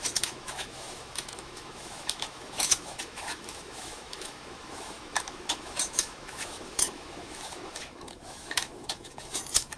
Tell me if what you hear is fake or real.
fake